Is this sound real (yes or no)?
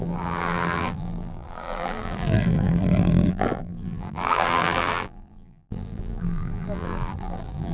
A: no